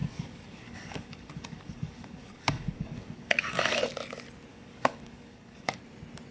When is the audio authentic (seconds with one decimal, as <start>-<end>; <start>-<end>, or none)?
3.8-4.5; 5.8-6.3